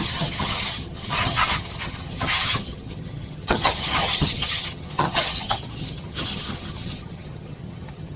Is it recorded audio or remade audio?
remade